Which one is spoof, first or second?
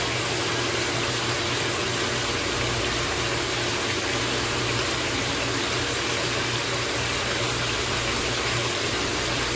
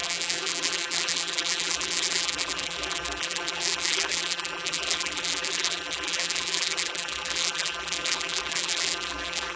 second